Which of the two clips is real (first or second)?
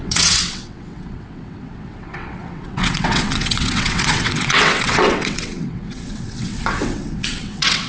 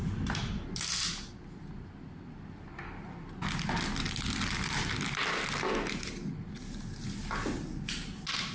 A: second